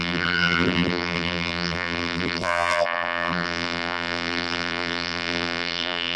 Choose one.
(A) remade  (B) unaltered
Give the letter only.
A